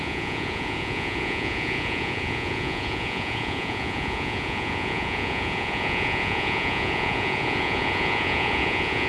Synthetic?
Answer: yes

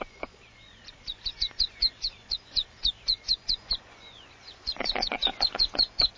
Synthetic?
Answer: yes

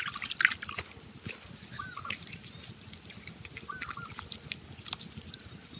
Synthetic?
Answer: no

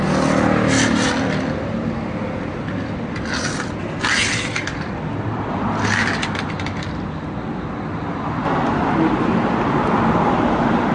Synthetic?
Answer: no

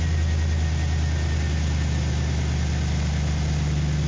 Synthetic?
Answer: no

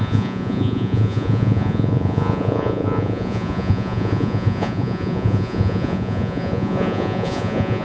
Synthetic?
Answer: yes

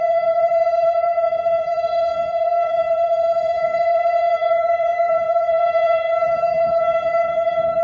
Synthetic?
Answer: yes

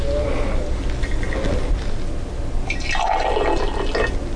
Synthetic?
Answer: no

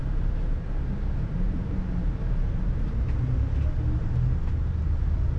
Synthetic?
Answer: no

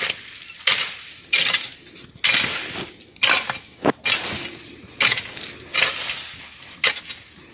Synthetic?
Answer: no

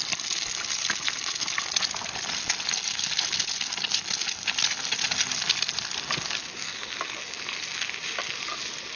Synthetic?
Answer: no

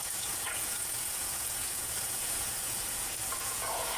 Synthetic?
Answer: yes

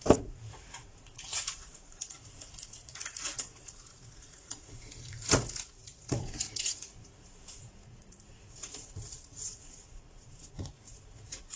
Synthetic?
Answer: yes